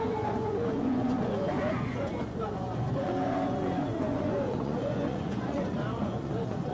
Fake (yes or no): yes